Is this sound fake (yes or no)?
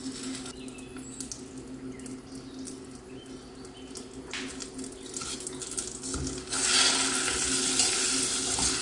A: no